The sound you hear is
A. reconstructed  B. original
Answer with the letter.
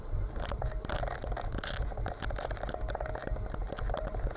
B